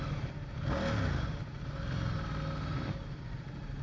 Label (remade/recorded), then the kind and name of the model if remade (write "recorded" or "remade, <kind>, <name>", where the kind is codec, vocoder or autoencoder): recorded